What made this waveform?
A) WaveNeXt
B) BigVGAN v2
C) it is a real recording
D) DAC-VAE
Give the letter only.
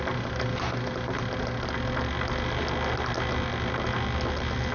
C